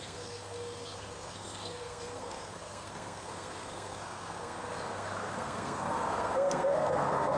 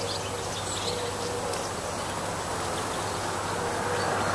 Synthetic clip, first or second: first